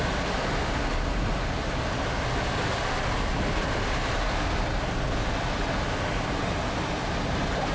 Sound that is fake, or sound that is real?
real